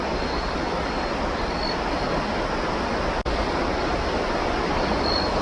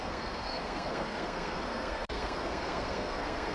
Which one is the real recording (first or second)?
first